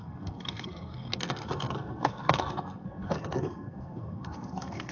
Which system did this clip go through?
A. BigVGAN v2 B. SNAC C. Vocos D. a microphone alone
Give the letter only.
B